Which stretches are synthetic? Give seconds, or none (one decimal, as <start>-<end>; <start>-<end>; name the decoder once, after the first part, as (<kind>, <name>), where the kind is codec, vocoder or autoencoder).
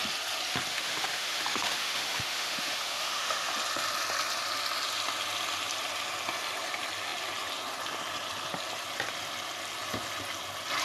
0.7-3.5 (autoencoder, DAC-VAE)